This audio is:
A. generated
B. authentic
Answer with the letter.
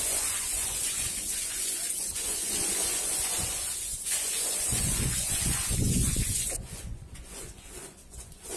A